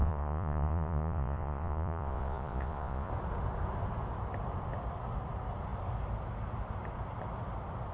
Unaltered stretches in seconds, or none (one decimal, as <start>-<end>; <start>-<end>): 3.1-7.9